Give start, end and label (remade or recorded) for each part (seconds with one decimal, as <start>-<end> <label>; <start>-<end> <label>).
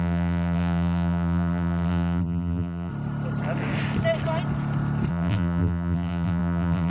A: 0.0-2.9 remade; 2.9-5.1 recorded; 5.1-6.9 remade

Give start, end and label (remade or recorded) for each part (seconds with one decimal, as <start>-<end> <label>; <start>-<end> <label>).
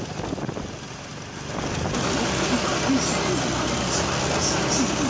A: 0.0-5.1 recorded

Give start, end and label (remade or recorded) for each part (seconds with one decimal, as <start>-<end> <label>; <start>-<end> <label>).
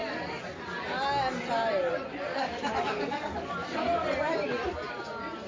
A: 0.0-2.3 recorded; 2.3-3.5 remade; 3.5-5.5 recorded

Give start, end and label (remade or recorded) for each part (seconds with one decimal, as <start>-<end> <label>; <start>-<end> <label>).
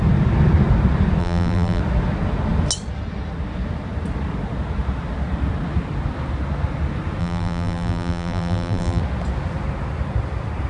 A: 0.0-1.2 recorded; 1.2-1.8 remade; 1.8-7.2 recorded; 7.2-9.0 remade; 9.0-10.7 recorded